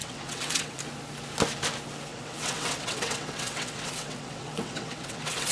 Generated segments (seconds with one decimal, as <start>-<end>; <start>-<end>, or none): 0.0-0.8; 2.1-5.5